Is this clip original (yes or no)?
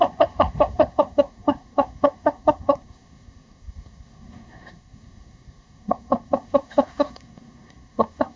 no